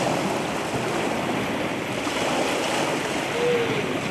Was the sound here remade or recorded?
recorded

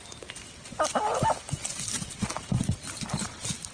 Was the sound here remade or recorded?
recorded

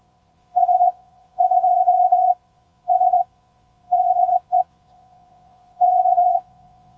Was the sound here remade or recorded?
remade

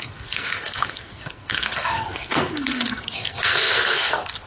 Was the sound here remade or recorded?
remade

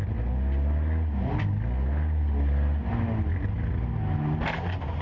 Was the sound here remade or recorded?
recorded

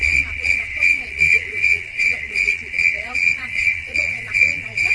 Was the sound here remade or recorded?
remade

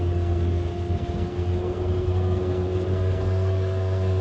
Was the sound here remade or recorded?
remade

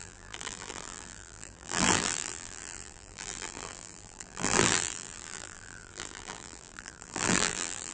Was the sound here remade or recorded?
remade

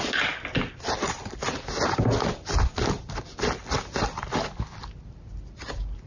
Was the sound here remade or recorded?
recorded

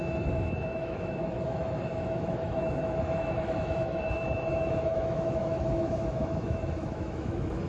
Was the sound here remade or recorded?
remade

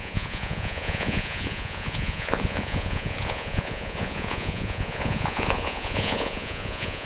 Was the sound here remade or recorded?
remade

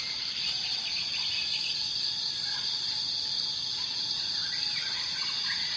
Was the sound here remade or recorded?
recorded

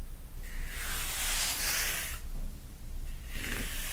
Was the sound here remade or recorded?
recorded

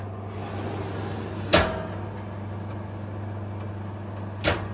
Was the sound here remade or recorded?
recorded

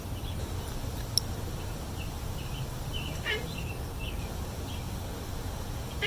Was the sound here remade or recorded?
recorded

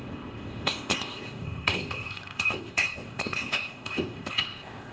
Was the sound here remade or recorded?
remade